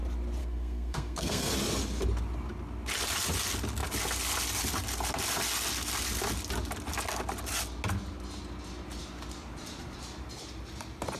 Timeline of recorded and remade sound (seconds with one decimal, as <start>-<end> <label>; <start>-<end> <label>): 0.0-0.4 recorded; 0.4-1.5 remade; 1.5-11.2 recorded